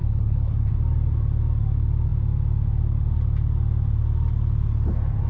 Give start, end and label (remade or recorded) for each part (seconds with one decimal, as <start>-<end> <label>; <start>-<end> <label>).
0.0-0.7 remade; 0.7-5.3 recorded